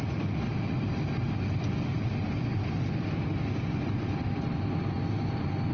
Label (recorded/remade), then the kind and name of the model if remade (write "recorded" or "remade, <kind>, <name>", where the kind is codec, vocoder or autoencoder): recorded